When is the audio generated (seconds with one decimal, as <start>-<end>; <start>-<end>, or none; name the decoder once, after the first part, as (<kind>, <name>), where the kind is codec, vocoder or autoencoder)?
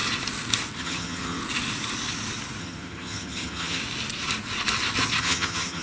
0.8-1.4 (vocoder, HiFi-GAN); 2.6-3.8; 5.2-5.8